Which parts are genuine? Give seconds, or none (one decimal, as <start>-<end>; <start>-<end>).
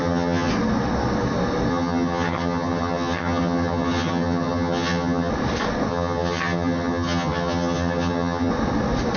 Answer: 0.5-1.7; 5.3-5.9; 8.5-9.2